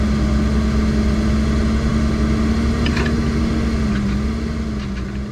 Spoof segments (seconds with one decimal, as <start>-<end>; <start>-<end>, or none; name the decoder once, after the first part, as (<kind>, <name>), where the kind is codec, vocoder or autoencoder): none